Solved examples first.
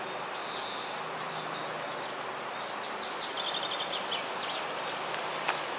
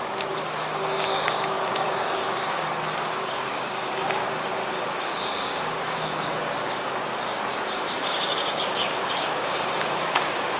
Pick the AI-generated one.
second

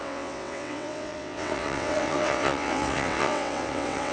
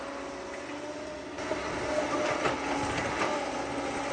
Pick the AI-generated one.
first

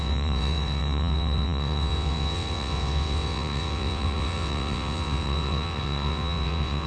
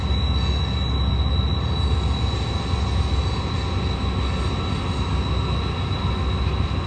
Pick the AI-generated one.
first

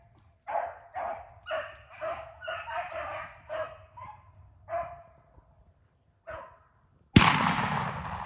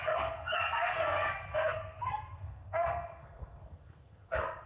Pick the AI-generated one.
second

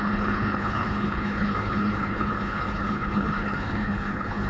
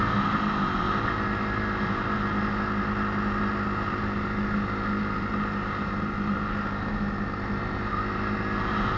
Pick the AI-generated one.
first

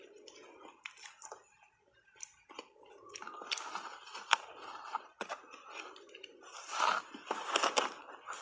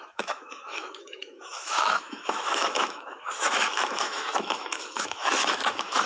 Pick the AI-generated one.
second